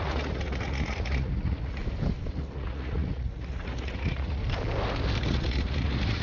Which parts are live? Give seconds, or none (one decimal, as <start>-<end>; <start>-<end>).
1.8-2.3; 4.4-5.2